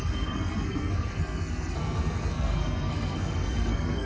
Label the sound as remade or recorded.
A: remade